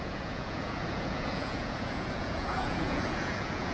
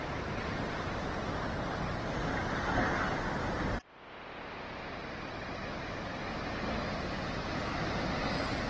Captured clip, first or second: second